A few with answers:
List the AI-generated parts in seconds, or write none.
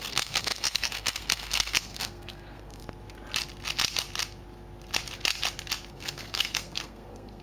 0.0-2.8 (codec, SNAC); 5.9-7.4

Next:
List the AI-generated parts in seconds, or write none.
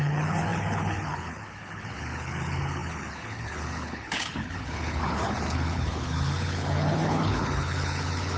0.0-8.4 (codec, HILCodec)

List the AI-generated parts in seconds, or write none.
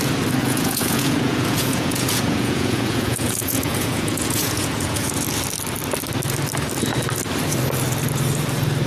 0.4-5.1 (vocoder, Vocos)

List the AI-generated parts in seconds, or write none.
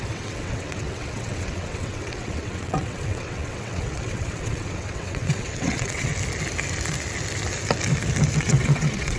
0.0-6.1 (vocoder, WaveNeXt); 8.4-9.2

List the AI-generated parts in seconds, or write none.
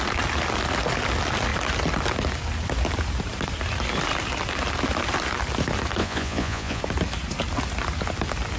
6.0-6.8 (vocoder, Vocos)